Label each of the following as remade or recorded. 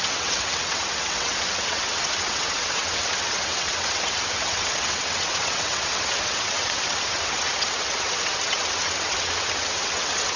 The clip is remade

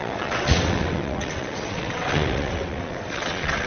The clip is remade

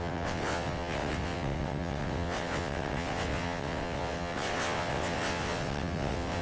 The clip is remade